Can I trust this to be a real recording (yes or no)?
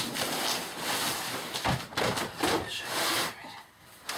yes